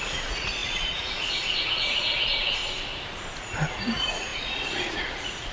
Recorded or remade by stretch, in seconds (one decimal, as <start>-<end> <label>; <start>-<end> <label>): 0.0-2.6 remade; 2.6-3.4 recorded; 3.4-5.5 remade